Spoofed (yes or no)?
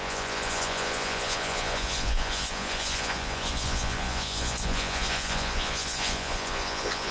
yes